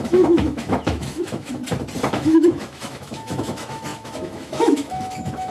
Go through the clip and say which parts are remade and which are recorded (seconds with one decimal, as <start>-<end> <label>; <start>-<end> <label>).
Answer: 0.0-1.6 remade; 1.6-2.1 recorded; 2.1-5.5 remade

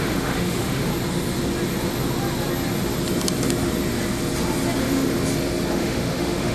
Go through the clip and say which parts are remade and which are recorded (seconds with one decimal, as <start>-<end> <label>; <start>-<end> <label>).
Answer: 0.0-0.9 remade; 0.9-4.8 recorded; 4.8-5.2 remade; 5.2-5.7 recorded; 5.7-6.5 remade

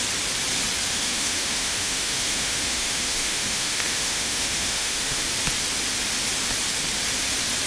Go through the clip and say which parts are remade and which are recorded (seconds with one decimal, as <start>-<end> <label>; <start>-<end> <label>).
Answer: 0.0-0.9 recorded; 0.9-5.2 remade; 5.2-7.7 recorded

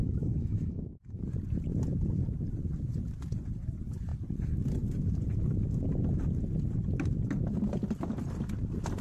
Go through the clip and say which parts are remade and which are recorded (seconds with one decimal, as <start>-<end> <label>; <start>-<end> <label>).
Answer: 0.0-1.2 remade; 1.2-9.0 recorded

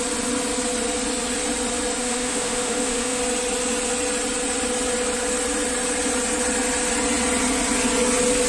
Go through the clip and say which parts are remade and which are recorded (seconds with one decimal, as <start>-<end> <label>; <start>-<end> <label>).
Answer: 0.0-2.0 recorded; 2.0-3.2 remade; 3.2-8.5 recorded

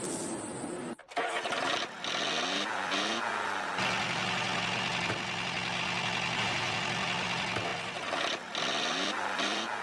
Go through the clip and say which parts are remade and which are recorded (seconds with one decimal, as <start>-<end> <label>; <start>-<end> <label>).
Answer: 0.0-9.8 recorded